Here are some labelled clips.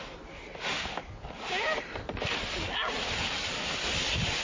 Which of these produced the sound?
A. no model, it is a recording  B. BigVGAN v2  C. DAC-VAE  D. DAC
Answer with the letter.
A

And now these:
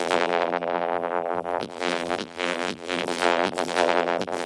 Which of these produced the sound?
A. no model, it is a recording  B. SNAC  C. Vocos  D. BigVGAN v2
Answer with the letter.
D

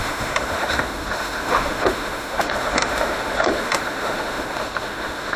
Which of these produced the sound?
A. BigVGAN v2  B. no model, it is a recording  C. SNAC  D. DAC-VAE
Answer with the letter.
D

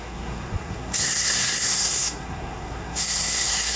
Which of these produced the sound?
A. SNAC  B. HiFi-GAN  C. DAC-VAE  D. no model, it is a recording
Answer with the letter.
A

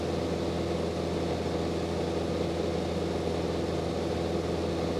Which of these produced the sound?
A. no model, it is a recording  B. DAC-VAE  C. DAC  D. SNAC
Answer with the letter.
A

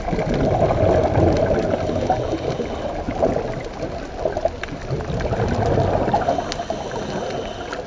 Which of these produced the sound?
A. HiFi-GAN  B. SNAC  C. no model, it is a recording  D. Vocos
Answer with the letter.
C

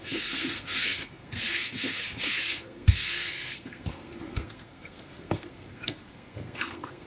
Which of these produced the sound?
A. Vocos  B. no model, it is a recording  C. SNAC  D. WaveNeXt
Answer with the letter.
C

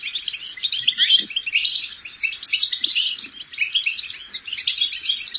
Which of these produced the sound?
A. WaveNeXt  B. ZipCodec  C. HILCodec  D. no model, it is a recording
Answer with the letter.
D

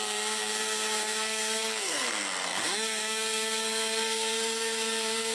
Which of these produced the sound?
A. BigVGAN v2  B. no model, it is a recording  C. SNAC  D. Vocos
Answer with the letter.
C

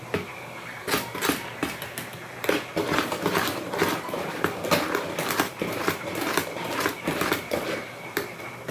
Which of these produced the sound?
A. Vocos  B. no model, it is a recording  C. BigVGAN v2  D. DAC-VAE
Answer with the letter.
C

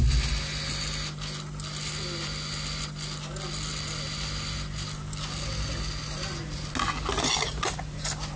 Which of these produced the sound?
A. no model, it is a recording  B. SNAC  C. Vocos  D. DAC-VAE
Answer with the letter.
A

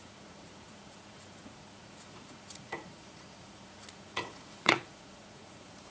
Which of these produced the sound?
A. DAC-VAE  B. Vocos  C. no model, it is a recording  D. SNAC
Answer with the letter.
B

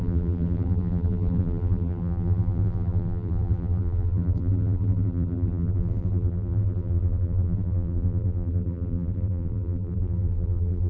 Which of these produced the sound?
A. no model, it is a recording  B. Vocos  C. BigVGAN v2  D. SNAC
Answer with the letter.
C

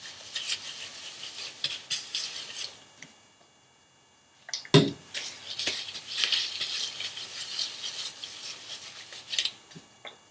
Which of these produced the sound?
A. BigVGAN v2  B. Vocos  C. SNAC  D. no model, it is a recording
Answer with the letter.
D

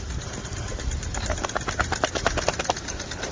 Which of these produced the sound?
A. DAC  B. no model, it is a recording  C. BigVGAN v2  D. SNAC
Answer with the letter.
C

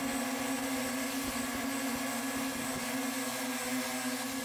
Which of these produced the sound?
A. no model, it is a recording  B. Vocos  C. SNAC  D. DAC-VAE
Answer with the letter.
A